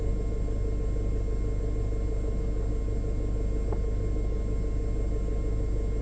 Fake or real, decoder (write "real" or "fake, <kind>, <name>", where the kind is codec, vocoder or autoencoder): real